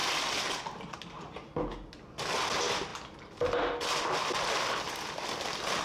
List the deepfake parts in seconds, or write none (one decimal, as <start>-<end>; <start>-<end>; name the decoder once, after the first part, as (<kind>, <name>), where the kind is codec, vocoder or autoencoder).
none